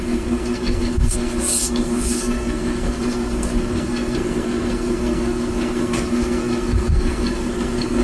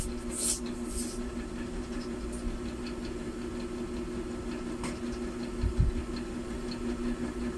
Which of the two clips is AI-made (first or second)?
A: first